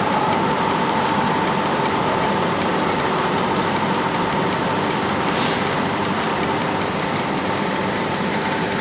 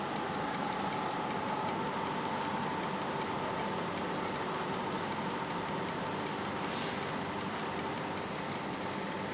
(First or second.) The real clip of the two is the second